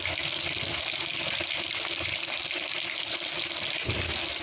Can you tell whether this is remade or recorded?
recorded